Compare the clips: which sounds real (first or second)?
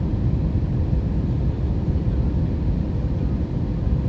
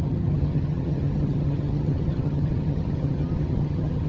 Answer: first